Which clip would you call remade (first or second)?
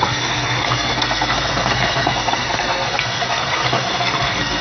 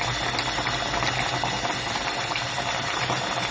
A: first